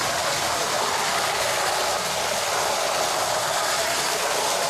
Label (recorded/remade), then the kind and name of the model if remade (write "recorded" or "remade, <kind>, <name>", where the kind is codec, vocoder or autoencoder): recorded